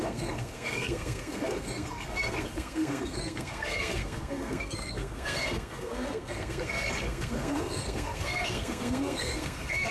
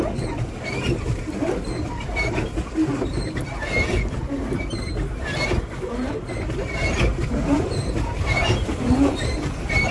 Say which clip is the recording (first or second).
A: second